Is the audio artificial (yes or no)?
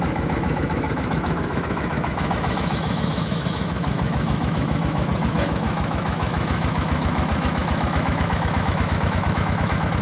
yes